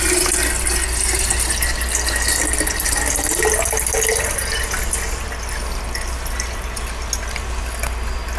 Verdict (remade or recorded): recorded